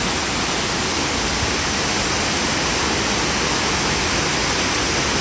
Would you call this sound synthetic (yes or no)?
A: no